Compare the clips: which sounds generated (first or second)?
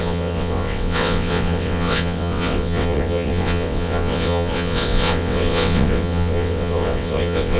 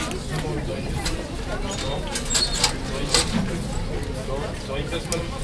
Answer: first